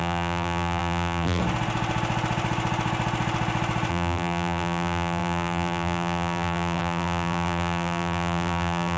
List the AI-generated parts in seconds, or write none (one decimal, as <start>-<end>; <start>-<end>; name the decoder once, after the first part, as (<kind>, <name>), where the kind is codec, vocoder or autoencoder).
0.0-1.4 (vocoder, BigVGAN v2); 3.9-9.0